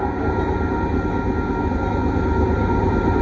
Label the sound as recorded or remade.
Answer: recorded